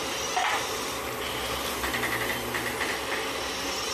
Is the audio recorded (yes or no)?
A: no